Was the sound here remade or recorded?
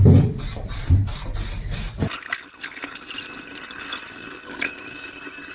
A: remade